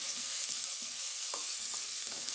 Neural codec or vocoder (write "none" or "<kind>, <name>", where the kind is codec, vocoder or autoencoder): codec, SNAC